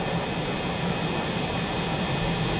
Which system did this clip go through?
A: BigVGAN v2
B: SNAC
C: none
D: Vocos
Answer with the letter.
A